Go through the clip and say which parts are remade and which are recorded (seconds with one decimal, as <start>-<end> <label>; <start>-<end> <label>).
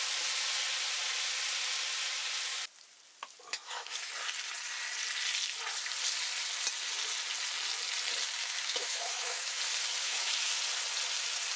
0.0-3.5 recorded; 3.5-4.1 remade; 4.1-8.4 recorded; 8.4-9.6 remade; 9.6-10.0 recorded; 10.0-10.5 remade; 10.5-11.6 recorded